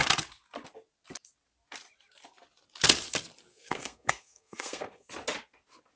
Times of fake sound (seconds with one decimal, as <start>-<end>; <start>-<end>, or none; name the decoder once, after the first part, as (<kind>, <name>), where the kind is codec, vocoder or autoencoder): 3.5-5.1 (codec, SNAC)